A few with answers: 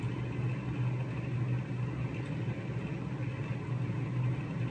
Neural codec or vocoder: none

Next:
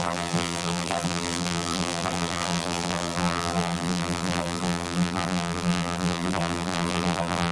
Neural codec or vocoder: vocoder, BigVGAN v2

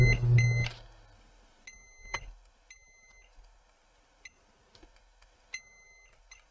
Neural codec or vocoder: none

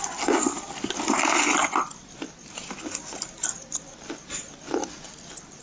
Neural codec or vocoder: none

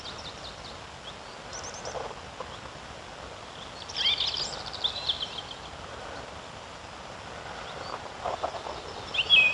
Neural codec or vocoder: none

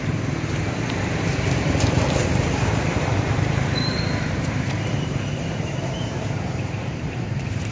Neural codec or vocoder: vocoder, BigVGAN v2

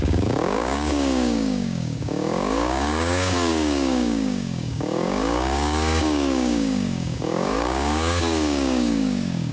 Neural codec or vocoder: codec, DAC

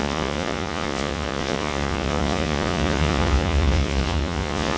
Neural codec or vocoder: vocoder, Vocos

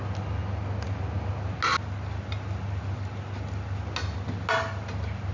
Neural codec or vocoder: none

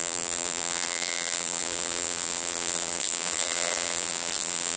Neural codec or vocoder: vocoder, BigVGAN v2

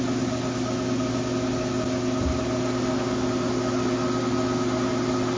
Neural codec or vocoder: none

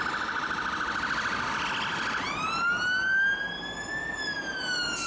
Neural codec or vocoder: none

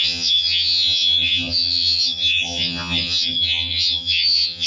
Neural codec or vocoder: vocoder, HiFi-GAN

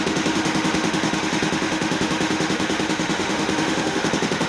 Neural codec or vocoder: autoencoder, DAC-VAE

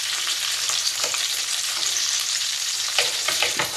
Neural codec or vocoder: vocoder, BigVGAN v2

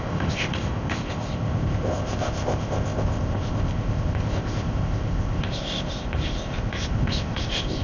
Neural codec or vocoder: codec, ZipCodec